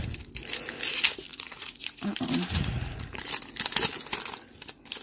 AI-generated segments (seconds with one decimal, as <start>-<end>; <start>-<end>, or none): 1.3-3.2

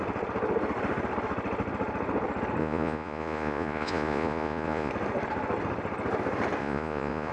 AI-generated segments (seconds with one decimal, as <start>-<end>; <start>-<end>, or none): 2.6-4.9; 6.6-7.3

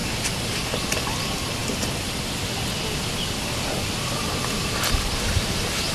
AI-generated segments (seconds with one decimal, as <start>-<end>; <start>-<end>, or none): none

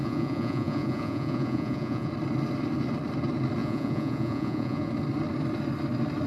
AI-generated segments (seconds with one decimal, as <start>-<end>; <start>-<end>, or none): 0.0-2.1; 3.6-4.9

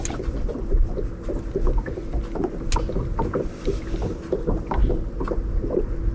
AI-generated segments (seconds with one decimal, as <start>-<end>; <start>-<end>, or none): none

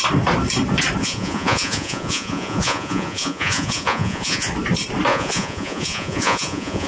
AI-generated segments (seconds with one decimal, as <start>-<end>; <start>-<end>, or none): 1.0-4.5; 5.1-6.9